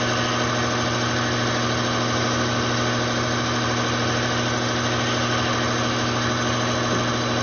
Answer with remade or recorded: recorded